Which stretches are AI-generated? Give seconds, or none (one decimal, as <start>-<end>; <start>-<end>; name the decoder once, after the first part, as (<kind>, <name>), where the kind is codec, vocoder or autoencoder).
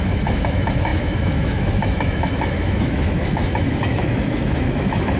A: 0.0-5.2 (autoencoder, DAC-VAE)